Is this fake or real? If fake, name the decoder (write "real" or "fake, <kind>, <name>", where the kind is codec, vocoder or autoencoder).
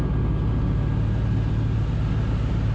real